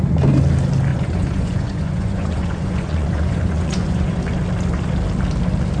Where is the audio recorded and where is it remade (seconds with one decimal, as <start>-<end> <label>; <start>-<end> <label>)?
0.0-0.9 recorded; 0.9-4.2 remade; 4.2-5.8 recorded